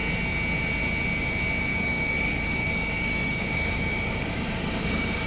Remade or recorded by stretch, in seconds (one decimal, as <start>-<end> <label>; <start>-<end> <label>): 0.0-1.7 recorded; 1.7-5.3 remade